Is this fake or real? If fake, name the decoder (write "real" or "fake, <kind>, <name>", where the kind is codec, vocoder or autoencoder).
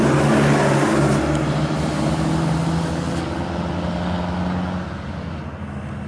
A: real